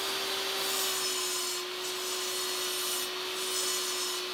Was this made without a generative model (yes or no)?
yes